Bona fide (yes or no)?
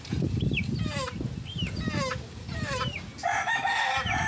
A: yes